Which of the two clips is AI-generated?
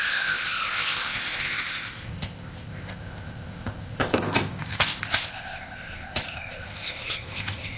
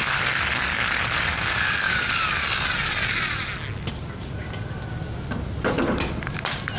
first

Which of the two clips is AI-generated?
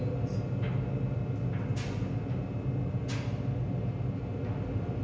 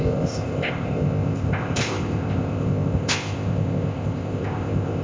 second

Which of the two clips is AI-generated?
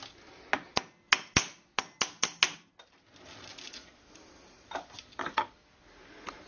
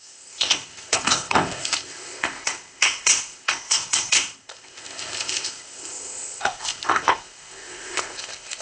second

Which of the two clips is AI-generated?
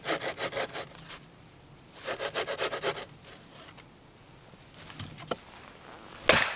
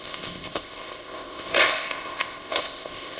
second